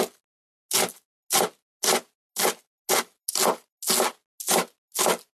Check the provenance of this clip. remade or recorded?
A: recorded